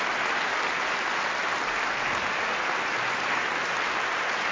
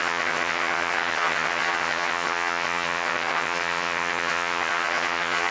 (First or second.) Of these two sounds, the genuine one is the first